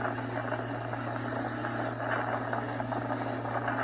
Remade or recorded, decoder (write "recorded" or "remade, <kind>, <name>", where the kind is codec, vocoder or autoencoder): recorded